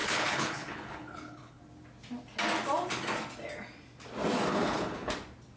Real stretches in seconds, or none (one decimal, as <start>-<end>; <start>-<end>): 1.6-4.5; 5.1-5.6

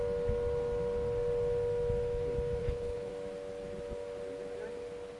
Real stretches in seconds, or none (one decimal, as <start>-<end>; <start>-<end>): 0.0-2.6; 3.1-5.2

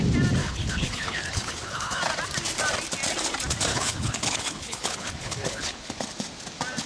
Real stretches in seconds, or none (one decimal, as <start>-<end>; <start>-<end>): 0.0-0.4; 2.0-3.7; 5.9-6.9

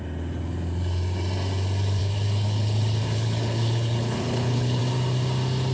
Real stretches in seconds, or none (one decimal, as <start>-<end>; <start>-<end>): 0.0-2.0; 4.8-5.7